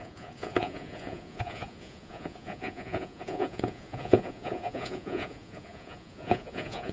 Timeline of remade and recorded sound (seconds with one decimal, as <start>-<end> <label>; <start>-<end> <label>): 0.0-6.9 remade